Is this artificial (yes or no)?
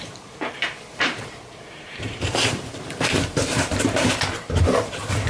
yes